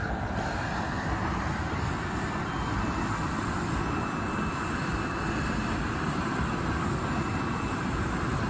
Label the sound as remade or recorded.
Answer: recorded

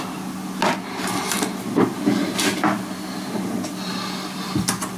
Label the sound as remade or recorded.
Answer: recorded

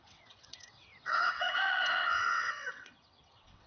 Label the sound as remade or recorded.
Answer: remade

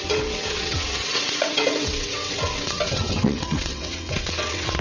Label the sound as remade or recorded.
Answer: remade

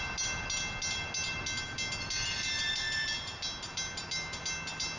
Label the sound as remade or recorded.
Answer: recorded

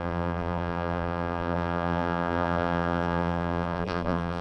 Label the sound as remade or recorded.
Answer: remade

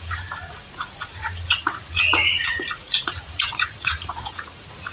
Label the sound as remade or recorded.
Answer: remade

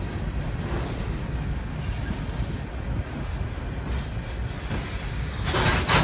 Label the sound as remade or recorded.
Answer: recorded